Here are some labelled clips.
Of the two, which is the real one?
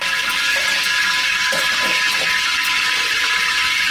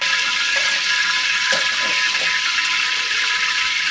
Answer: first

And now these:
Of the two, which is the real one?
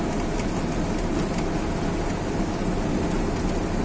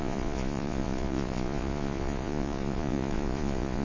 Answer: first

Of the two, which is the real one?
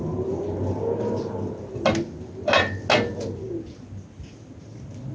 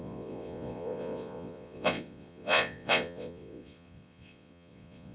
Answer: first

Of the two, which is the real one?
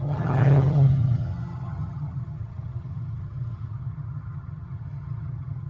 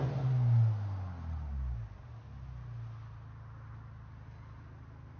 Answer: second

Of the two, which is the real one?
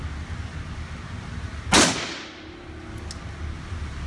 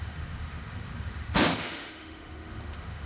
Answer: first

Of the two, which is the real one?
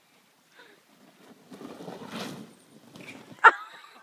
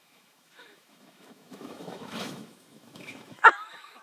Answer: first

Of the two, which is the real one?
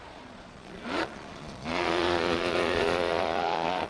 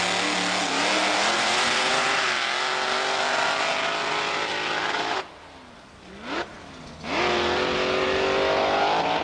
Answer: second